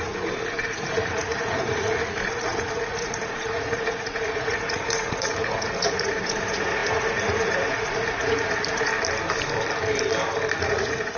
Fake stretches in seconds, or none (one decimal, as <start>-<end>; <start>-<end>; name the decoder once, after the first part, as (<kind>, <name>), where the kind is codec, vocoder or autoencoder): 0.0-8.9 (vocoder, Vocos); 10.6-11.2